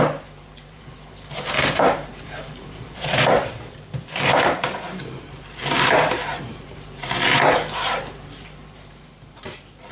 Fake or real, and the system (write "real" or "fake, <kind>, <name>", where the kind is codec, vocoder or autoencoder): fake, vocoder, BigVGAN v2